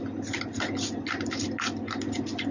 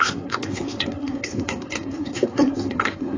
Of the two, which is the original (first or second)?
first